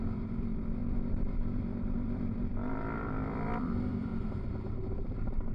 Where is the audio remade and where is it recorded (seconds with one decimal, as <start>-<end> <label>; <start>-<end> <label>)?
0.0-0.8 remade; 0.8-1.4 recorded; 1.4-4.1 remade; 4.1-4.9 recorded; 4.9-5.5 remade